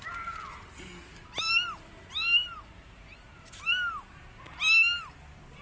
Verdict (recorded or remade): recorded